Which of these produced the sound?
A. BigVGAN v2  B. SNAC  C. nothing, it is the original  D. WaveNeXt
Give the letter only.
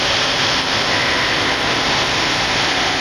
C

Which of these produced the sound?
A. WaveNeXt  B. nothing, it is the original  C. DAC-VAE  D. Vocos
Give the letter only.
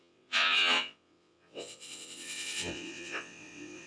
A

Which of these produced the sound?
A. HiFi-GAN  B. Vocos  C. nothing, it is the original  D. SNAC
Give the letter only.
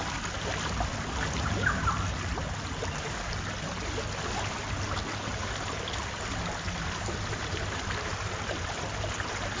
C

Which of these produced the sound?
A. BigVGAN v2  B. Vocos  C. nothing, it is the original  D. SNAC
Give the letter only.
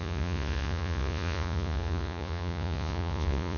B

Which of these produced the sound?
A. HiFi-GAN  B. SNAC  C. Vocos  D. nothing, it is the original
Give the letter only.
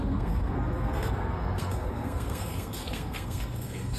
B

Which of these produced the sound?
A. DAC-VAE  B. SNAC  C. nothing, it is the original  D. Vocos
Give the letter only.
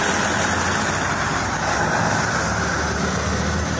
C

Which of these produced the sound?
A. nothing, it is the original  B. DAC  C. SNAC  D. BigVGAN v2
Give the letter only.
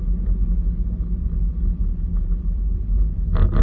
A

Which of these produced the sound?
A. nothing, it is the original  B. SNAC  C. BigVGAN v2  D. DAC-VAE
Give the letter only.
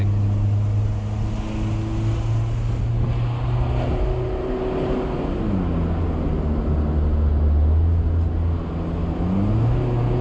A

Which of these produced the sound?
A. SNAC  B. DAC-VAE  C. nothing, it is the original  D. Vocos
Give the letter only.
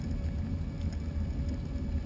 C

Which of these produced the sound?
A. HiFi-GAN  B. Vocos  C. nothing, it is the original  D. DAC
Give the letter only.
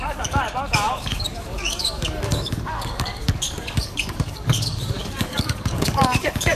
D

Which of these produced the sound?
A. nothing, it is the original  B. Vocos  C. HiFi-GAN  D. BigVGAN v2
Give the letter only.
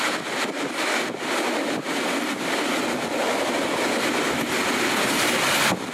A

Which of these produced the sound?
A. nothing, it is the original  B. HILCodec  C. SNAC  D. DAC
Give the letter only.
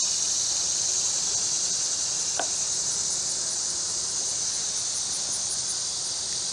A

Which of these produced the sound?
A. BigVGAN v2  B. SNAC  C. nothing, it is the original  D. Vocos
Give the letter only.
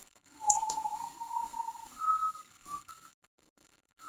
B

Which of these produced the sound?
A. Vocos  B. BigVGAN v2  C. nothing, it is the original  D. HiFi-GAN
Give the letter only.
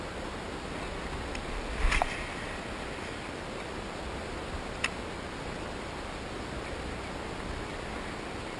C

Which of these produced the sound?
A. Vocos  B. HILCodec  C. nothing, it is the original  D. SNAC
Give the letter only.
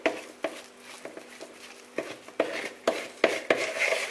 C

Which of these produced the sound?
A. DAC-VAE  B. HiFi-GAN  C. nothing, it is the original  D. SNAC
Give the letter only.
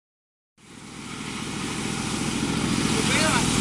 C